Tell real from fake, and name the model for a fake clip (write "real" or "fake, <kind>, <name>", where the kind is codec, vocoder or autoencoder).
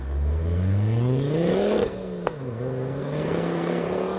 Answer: fake, codec, SNAC